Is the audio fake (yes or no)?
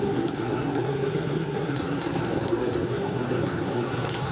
yes